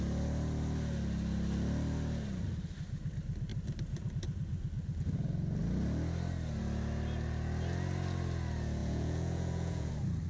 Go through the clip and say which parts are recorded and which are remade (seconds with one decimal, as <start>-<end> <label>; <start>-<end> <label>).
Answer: 0.0-8.8 recorded; 8.8-9.9 remade; 9.9-10.3 recorded